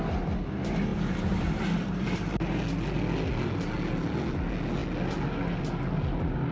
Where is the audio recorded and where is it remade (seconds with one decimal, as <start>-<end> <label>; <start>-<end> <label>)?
0.0-0.9 recorded; 0.9-2.6 remade; 2.6-6.5 recorded